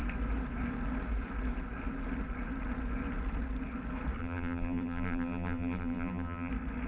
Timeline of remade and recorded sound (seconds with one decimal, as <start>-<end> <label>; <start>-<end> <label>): 0.0-4.2 recorded; 4.2-6.5 remade; 6.5-6.9 recorded